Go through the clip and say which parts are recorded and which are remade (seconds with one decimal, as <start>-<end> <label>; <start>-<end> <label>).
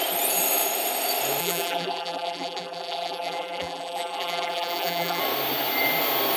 0.0-1.4 recorded; 1.4-5.2 remade; 5.2-6.4 recorded